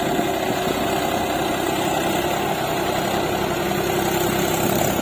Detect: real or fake real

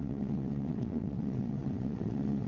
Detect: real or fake fake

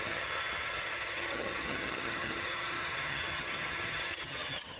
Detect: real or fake fake